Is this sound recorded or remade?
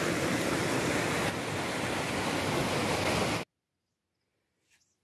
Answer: recorded